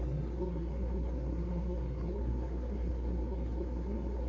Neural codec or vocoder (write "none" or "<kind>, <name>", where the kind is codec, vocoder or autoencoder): codec, SNAC